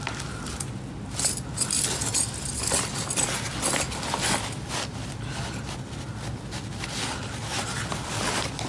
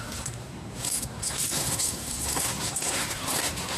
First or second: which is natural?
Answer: first